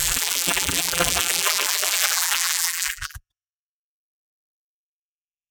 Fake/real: fake